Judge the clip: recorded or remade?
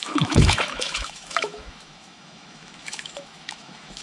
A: remade